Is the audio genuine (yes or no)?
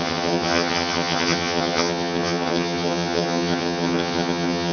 no